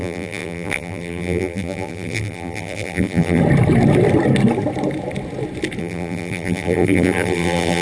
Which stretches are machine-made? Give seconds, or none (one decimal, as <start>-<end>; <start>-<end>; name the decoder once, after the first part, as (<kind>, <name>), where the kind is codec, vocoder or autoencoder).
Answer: 0.0-3.4 (vocoder, BigVGAN v2); 5.8-7.8